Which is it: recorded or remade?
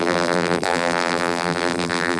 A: remade